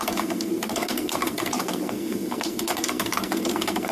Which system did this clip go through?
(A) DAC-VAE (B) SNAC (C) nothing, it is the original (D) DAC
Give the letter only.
B